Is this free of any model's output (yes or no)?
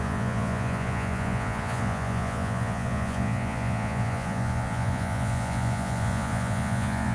no